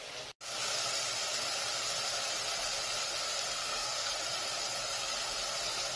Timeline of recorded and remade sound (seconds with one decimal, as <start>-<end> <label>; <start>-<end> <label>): 0.0-3.6 recorded; 3.6-4.1 remade; 4.1-6.0 recorded